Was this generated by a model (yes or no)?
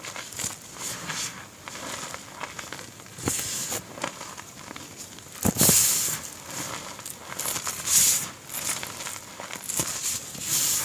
no